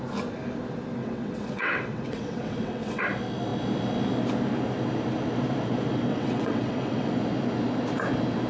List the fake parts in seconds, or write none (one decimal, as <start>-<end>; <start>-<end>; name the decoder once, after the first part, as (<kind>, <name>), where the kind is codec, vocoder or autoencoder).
1.0-3.0 (vocoder, WaveNeXt); 6.1-7.1